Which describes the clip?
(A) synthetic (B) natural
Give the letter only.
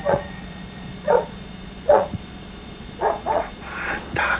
A